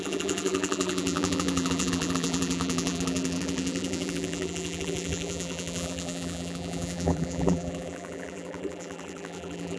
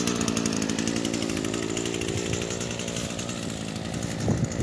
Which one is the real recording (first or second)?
second